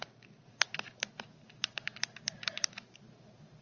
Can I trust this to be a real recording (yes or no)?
no